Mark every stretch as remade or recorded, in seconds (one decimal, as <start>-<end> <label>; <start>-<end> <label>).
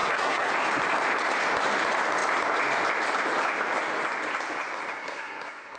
0.0-0.5 remade; 0.5-4.9 recorded; 4.9-5.8 remade